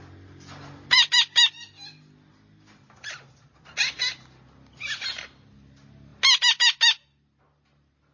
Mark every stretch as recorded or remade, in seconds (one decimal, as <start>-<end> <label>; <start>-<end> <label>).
0.0-8.1 recorded